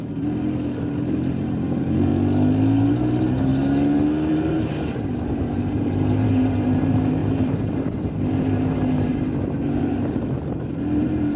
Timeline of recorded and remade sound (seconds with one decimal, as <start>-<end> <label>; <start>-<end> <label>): 0.0-2.1 remade; 2.1-2.9 recorded; 2.9-3.5 remade; 3.5-4.3 recorded; 4.3-11.4 remade